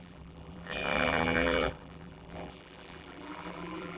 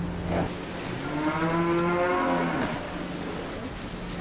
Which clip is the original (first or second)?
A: second